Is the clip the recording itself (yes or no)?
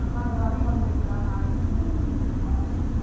yes